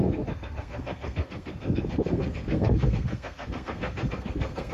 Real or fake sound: fake